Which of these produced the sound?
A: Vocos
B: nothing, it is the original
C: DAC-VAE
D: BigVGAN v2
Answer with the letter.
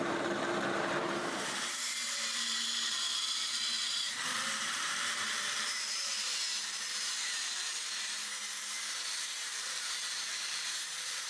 D